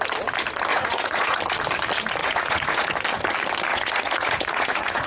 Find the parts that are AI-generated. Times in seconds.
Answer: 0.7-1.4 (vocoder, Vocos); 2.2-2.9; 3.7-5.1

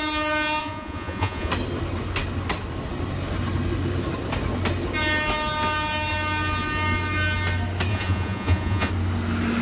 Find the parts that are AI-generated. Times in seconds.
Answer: 0.6-1.5 (vocoder, Vocos); 7.9-8.9